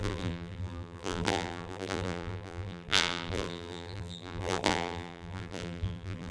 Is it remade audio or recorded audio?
remade